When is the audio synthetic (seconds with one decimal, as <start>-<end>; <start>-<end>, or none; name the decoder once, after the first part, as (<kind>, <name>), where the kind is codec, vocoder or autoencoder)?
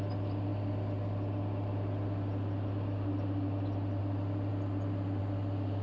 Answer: none